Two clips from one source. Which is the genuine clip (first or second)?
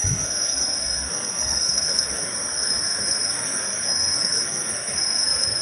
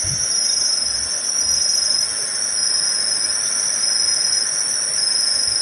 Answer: second